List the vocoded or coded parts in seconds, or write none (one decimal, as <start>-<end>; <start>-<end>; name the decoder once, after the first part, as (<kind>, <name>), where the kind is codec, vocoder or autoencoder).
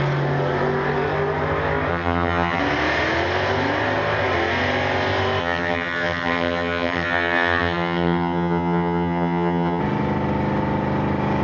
1.9-2.6 (vocoder, HiFi-GAN); 5.4-9.8